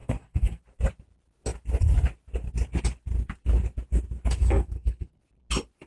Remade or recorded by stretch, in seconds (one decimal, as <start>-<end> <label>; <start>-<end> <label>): 0.0-0.6 remade; 0.6-4.4 recorded; 4.4-5.2 remade; 5.2-5.9 recorded